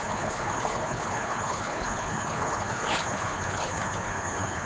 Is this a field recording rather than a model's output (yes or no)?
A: no